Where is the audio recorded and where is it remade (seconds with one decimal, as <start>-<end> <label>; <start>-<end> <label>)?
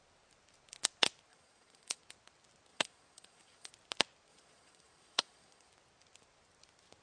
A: 0.0-1.3 recorded; 1.3-2.0 remade; 2.0-2.7 recorded; 2.7-3.7 remade; 3.7-4.3 recorded; 4.3-5.7 remade; 5.7-7.0 recorded